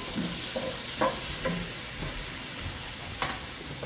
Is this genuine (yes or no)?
yes